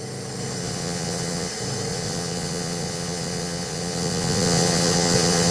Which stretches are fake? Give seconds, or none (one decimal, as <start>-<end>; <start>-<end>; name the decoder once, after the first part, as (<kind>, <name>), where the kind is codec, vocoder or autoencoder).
0.6-1.5 (vocoder, Vocos); 1.9-5.5